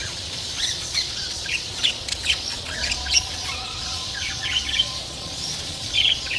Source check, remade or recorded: remade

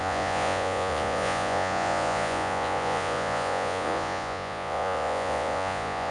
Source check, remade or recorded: remade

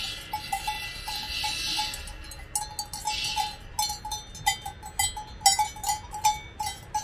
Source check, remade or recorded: recorded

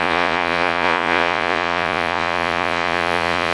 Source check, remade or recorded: remade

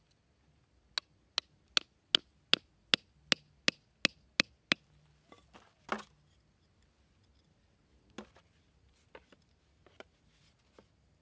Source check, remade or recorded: recorded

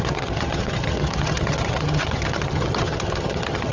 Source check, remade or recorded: remade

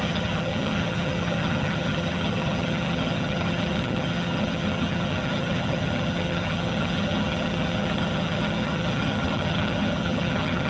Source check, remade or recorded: remade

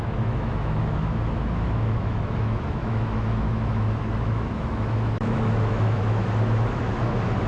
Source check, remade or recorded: remade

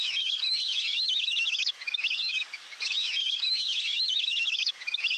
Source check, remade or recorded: remade